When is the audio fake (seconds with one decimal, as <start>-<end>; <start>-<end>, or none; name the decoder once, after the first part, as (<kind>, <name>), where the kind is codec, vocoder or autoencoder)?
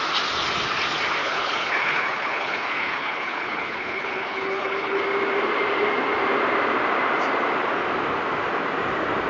1.2-5.0 (codec, HILCodec)